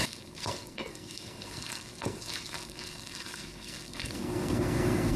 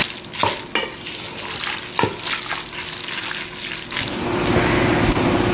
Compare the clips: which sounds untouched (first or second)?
second